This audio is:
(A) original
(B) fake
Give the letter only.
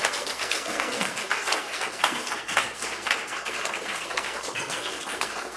B